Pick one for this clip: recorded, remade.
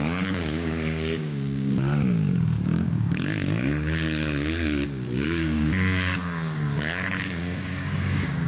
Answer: remade